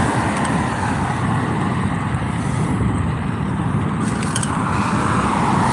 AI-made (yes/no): no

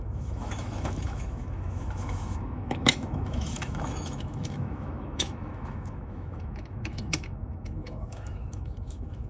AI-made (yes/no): yes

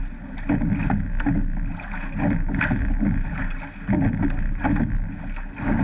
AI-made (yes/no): no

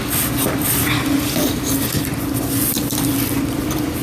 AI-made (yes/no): no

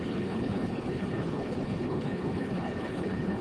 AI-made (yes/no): yes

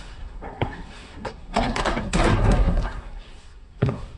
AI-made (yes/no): yes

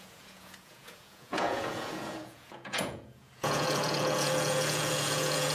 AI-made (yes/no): yes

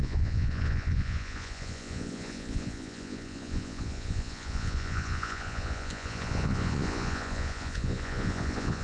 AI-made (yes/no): yes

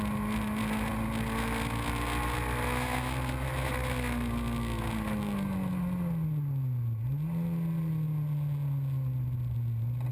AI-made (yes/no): no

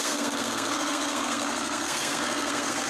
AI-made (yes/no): yes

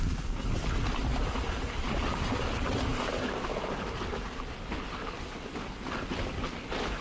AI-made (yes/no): no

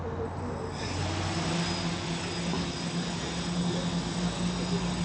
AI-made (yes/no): no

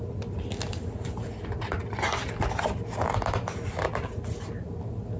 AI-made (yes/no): no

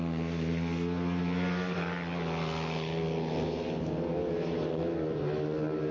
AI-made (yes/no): no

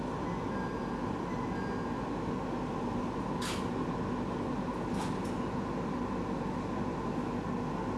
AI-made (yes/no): no